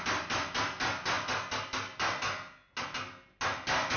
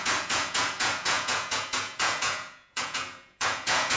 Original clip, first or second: first